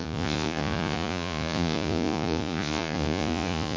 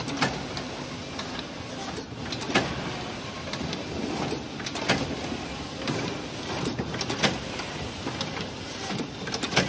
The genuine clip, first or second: second